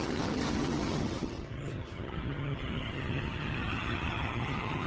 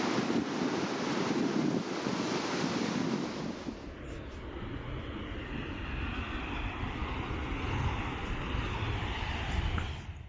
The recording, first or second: second